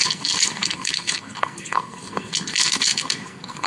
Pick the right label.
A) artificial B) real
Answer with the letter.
A